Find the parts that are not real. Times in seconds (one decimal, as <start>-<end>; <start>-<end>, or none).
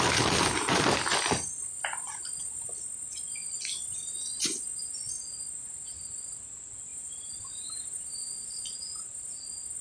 6.9-9.4